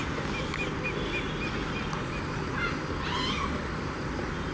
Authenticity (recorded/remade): recorded